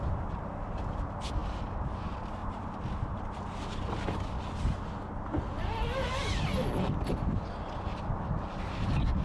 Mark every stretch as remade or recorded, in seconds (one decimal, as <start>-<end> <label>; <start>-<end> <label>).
0.0-2.4 recorded; 2.4-3.2 remade; 3.2-9.2 recorded